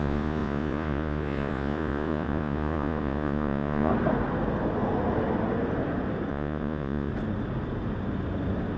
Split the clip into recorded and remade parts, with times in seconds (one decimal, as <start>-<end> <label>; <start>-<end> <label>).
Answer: 0.0-3.9 remade; 3.9-6.3 recorded; 6.3-7.1 remade; 7.1-8.8 recorded